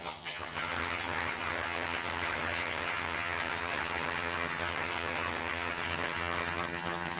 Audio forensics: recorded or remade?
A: remade